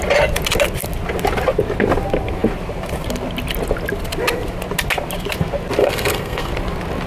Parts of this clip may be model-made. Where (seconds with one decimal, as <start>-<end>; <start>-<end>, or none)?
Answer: 5.8-6.5